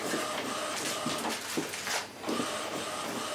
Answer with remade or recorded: recorded